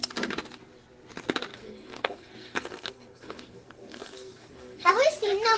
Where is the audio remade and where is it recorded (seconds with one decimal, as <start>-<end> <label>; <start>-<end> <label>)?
0.0-1.5 recorded; 1.5-4.9 remade; 4.9-5.6 recorded